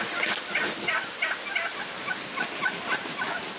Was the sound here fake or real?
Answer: real